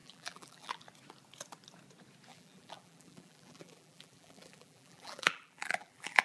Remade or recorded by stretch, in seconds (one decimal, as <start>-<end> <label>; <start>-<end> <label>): 0.0-0.8 remade; 0.8-2.3 recorded; 2.3-6.2 remade